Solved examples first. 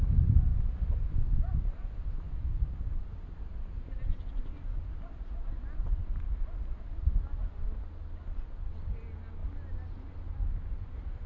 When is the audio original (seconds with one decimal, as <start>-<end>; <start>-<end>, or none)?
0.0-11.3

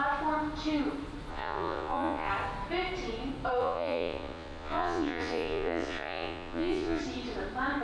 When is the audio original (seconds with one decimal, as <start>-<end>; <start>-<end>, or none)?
0.0-1.3; 2.3-3.6; 7.0-7.8

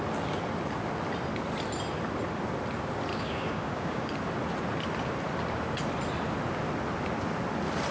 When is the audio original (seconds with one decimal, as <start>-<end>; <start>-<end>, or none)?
0.0-3.1; 4.1-7.9